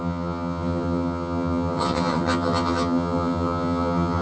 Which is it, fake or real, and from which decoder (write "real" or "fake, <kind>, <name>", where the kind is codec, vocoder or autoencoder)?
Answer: fake, vocoder, HiFi-GAN